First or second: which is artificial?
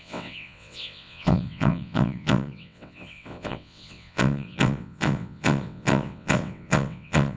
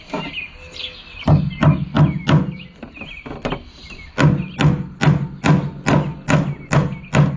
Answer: first